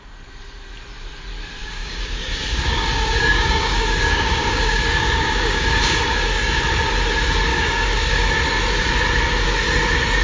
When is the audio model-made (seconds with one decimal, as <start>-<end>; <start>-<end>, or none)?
1.6-6.6; 7.5-8.3